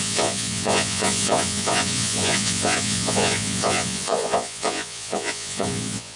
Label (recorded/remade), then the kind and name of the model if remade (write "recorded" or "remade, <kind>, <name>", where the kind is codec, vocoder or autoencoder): remade, vocoder, Vocos